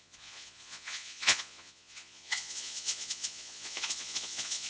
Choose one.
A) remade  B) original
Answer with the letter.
A